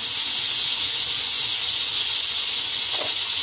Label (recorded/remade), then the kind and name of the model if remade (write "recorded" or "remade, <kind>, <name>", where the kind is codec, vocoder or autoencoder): remade, vocoder, Vocos